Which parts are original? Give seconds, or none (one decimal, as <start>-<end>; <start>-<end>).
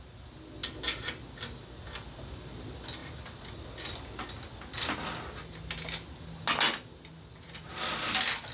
0.0-8.5